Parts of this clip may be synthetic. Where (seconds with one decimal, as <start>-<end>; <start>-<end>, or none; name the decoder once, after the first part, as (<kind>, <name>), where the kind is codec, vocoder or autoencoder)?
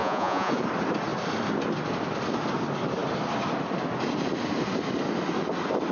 0.0-0.5 (vocoder, Vocos)